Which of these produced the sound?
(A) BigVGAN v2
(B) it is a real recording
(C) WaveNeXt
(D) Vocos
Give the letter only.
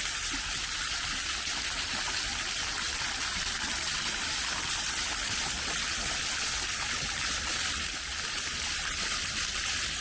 B